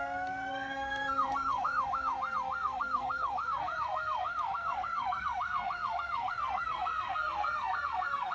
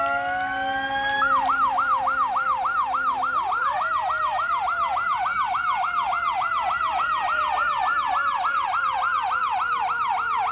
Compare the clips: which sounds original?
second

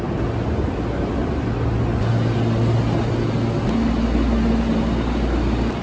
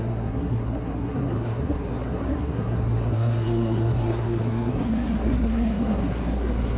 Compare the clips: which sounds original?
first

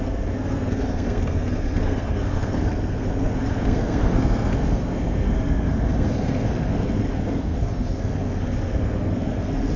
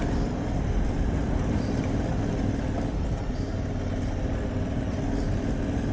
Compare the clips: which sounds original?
second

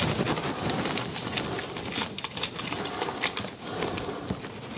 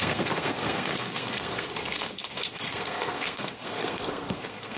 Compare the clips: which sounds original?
first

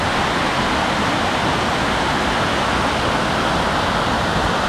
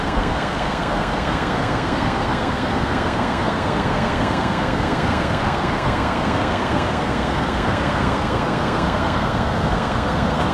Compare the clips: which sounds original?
first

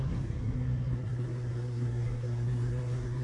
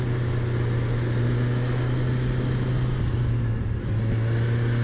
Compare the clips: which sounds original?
second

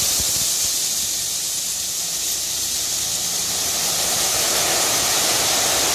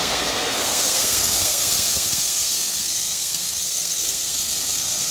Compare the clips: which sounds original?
first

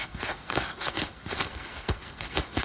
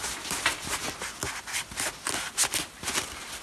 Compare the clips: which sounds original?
second